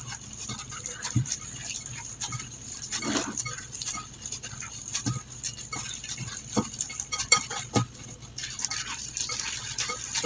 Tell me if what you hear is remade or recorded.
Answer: remade